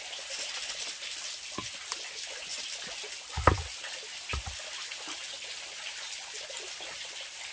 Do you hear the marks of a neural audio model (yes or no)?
no